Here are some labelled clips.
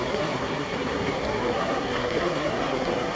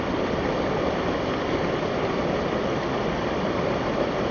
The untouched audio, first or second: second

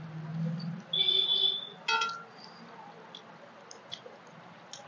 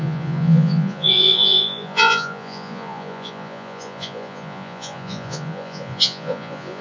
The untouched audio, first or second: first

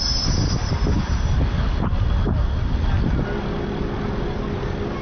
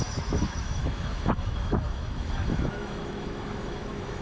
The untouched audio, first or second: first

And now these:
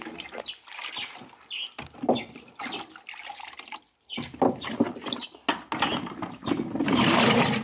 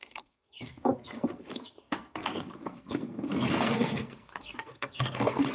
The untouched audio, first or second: first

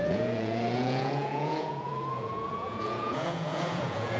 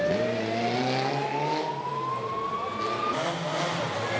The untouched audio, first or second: second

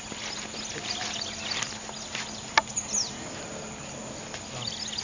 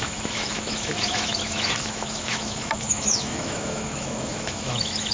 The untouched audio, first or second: first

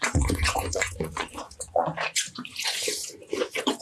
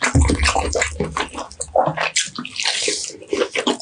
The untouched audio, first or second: second